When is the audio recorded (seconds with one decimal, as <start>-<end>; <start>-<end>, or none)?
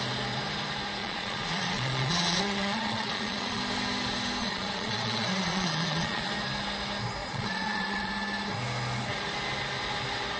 0.0-1.0; 3.6-4.4; 6.3-7.2; 8.1-10.4